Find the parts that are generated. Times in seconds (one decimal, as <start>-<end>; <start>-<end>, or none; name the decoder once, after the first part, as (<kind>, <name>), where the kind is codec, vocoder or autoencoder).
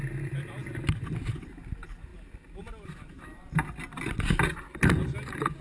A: none